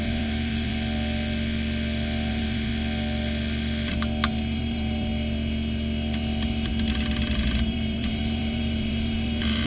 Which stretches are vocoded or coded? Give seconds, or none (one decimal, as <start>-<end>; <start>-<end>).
0.0-0.7; 2.3-2.7; 4.3-5.1; 7.6-9.7